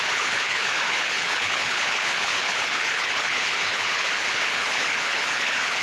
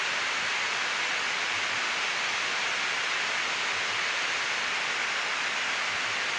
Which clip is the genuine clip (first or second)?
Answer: second